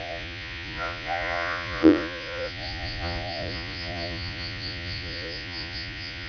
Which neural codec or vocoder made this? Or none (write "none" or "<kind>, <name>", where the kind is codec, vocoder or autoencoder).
vocoder, Vocos